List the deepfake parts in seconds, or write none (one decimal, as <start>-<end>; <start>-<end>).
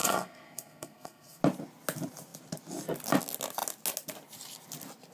0.0-1.4